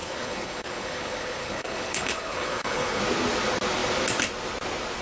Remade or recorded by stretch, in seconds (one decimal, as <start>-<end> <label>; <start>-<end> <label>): 0.0-3.0 remade; 3.0-5.0 recorded